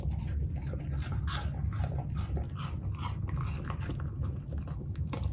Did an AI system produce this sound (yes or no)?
no